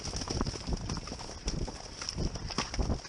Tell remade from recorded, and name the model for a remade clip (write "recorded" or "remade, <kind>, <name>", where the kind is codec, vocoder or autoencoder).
recorded